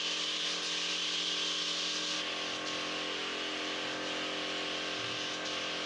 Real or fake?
real